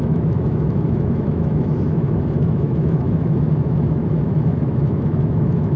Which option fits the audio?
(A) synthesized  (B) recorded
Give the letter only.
A